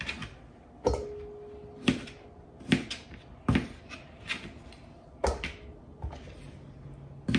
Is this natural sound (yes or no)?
yes